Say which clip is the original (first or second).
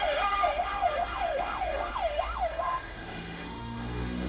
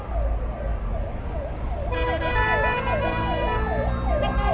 second